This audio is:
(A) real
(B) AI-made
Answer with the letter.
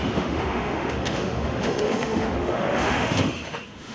B